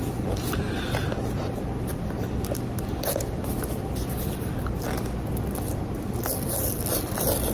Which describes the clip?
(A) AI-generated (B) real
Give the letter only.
B